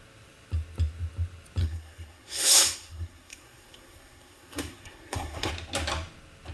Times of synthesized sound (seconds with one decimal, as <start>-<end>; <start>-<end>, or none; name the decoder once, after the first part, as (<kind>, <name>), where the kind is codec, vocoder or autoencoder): 1.6-5.5 (codec, SNAC)

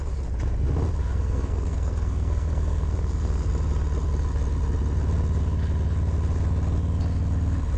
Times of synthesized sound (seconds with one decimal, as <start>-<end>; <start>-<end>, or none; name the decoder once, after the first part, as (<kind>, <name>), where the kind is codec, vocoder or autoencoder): 1.0-3.5 (codec, SNAC)

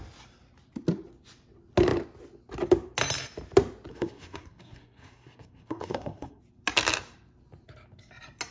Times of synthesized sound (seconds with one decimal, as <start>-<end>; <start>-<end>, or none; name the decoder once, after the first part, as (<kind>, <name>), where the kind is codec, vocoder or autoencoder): 3.9-6.4 (codec, SNAC)

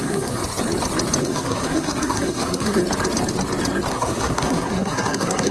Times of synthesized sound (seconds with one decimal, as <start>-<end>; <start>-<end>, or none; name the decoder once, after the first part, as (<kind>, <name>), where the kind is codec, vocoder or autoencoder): 0.0-0.4 (codec, SNAC); 1.2-2.8; 3.9-5.5

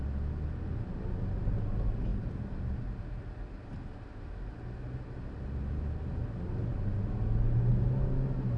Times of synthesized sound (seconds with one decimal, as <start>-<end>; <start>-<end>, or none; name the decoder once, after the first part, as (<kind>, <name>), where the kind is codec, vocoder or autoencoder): none

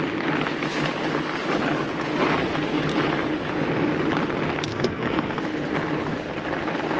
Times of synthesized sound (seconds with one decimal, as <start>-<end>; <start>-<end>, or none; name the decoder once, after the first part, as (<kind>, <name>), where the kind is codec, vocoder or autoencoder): 4.7-5.4 (codec, SNAC)

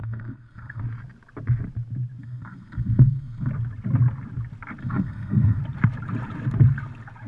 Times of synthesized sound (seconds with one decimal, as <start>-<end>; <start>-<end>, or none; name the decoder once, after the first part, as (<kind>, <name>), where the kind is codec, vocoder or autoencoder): 0.0-0.8 (codec, SNAC); 2.2-3.5; 4.8-5.6